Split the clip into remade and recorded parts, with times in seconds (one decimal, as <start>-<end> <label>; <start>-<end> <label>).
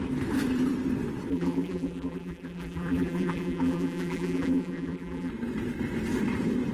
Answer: 0.0-1.3 recorded; 1.3-5.3 remade; 5.3-6.7 recorded